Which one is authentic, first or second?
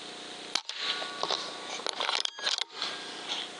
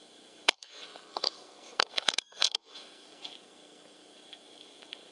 first